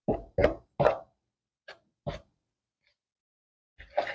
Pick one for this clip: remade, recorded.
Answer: recorded